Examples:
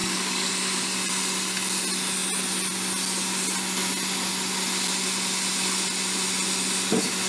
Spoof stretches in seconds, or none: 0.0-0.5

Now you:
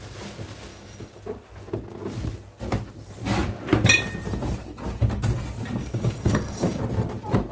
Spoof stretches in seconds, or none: 0.7-1.2; 5.8-6.8